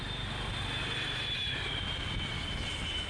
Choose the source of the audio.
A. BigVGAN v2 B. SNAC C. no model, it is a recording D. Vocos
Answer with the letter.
C